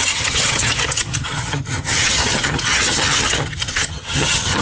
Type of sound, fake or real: fake